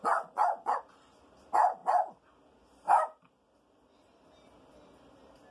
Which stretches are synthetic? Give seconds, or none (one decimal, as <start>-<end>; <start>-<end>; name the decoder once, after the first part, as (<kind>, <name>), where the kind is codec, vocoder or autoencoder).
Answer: 0.0-0.8 (vocoder, Vocos)